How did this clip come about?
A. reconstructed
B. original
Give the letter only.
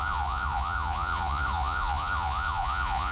A